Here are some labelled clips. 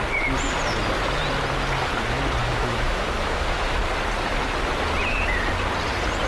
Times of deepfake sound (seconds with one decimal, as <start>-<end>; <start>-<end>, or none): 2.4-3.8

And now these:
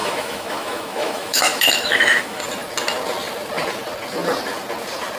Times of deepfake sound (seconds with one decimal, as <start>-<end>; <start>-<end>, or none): 0.0-2.4

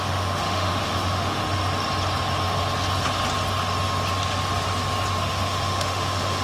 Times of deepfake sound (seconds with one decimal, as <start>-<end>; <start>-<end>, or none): 0.0-1.4; 5.2-6.4

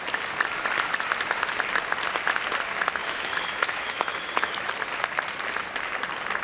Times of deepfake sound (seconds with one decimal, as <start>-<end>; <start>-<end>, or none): 3.0-4.7

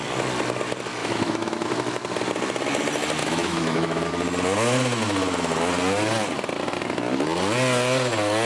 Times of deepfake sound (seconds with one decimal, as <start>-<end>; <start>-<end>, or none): 1.0-1.7; 3.2-4.1